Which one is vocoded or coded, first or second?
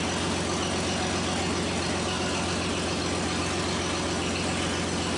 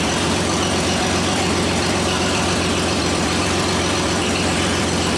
second